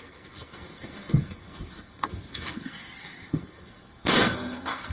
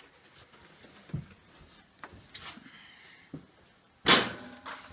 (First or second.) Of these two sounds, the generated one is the first